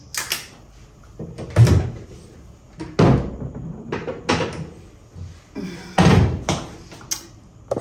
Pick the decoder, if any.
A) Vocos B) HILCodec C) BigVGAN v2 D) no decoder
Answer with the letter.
D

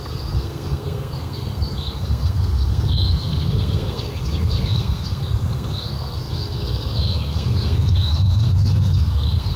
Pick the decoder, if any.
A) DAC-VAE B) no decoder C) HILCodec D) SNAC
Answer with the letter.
D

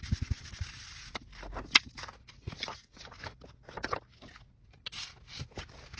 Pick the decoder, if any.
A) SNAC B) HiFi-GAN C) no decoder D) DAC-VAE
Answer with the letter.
C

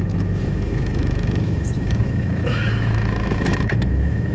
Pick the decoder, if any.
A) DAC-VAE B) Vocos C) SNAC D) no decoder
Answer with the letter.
A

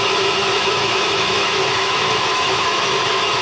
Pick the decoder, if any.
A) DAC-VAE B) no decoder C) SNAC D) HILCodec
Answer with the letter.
A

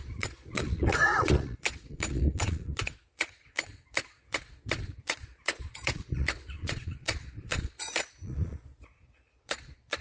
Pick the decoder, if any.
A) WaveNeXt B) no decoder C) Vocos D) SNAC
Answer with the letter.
C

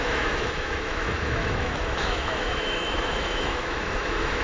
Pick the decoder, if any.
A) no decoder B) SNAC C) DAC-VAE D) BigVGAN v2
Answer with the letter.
C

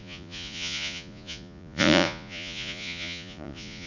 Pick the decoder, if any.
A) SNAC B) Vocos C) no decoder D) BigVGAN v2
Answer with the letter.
B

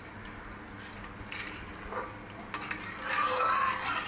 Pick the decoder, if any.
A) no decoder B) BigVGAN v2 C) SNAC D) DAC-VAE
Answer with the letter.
A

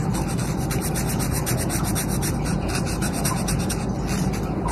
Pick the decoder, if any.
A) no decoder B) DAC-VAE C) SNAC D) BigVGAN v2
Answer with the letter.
A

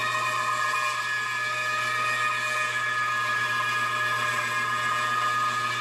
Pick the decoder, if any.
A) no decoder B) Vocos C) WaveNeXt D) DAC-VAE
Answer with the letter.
A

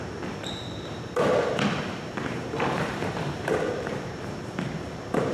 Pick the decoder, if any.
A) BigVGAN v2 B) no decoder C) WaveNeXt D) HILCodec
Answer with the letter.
A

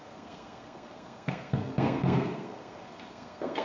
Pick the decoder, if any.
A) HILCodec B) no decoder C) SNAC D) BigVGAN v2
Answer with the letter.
C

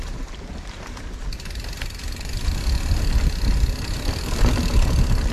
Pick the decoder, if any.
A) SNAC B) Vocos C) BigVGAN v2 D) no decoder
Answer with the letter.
C